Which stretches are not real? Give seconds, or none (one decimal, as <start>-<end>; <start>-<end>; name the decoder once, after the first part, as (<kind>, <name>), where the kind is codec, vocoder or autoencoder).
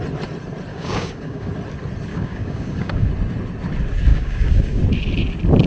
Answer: 0.7-1.5 (codec, DAC); 2.1-3.1; 4.1-4.8